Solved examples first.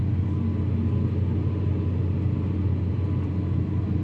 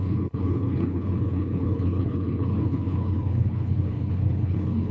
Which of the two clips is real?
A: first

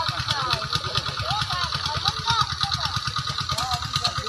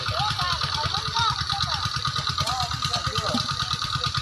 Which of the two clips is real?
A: first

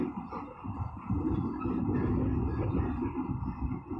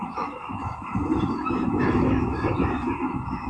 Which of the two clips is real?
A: first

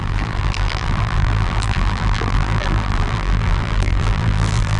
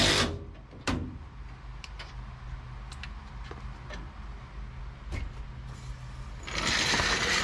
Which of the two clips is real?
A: second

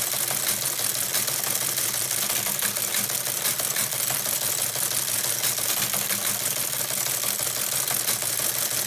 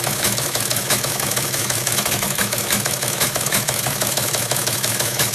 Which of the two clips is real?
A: first